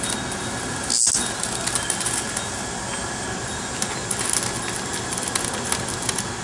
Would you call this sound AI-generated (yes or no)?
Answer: no